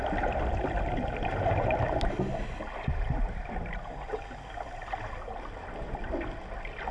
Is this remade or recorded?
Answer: recorded